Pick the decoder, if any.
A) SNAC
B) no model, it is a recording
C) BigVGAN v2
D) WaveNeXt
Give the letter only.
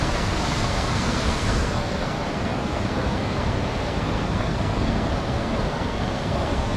A